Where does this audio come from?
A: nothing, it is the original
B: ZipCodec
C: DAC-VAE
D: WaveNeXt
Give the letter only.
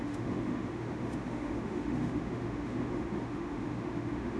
C